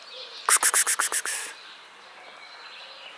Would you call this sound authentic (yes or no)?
yes